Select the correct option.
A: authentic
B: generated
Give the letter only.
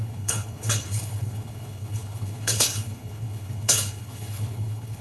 B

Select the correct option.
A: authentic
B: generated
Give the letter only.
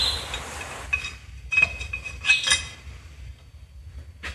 A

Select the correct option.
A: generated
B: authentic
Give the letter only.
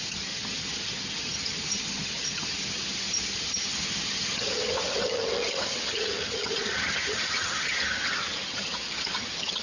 A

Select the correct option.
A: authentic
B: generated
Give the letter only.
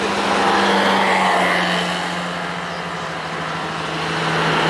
A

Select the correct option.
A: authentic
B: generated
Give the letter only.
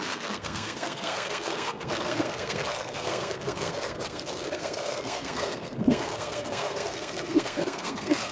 B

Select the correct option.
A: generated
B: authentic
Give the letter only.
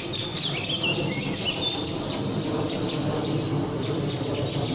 B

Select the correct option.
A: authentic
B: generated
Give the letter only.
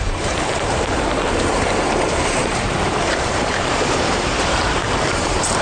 B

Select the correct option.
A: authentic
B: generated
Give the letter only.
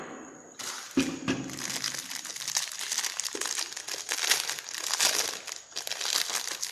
A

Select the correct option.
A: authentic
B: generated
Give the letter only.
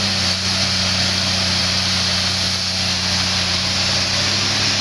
A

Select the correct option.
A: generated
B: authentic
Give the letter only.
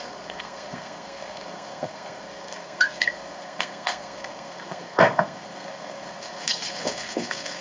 A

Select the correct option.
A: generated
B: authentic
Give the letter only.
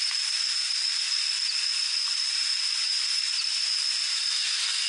B